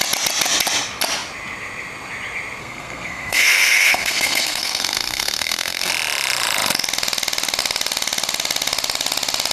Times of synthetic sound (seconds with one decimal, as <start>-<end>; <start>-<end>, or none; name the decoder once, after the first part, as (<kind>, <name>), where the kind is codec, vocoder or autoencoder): 2.6-5.9 (codec, SNAC)